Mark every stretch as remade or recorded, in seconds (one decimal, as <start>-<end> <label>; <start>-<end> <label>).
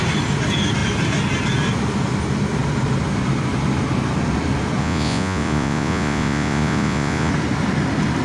0.0-4.8 recorded; 4.8-7.3 remade; 7.3-8.2 recorded